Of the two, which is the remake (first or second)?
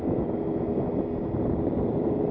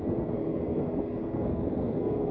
second